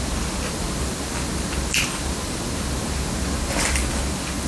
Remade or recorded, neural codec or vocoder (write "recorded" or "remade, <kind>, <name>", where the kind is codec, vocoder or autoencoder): recorded